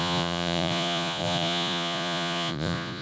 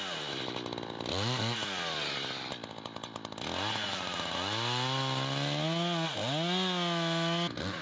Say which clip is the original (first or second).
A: second